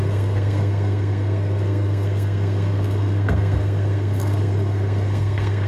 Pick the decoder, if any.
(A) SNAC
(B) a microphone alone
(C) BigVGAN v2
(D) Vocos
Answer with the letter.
A